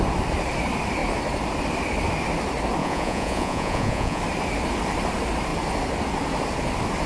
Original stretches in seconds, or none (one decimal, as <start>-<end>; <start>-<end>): 0.0-2.8; 4.2-7.1